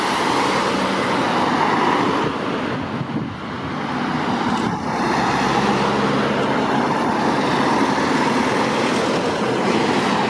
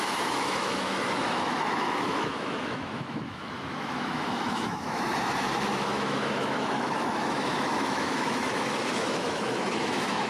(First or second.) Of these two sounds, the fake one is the second